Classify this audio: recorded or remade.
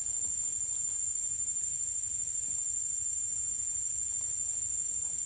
recorded